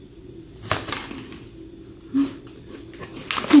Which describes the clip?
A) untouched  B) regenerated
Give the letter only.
A